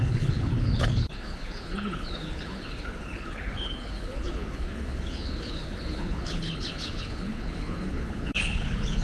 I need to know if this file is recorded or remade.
remade